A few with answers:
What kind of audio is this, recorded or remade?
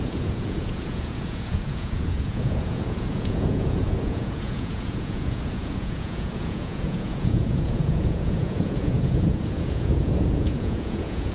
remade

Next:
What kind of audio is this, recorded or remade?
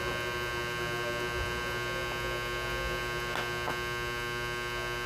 recorded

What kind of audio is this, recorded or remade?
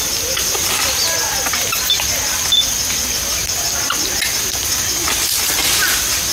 recorded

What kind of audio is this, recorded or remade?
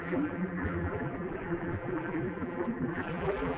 remade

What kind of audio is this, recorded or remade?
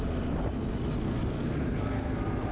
recorded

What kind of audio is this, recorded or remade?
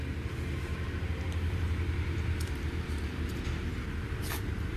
remade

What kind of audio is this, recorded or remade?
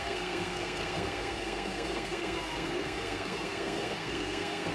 remade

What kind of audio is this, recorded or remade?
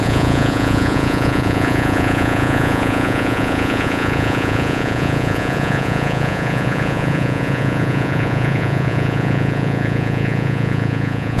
remade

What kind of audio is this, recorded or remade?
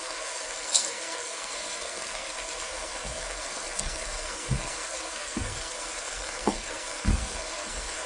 remade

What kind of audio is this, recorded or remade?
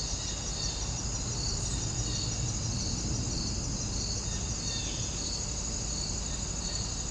recorded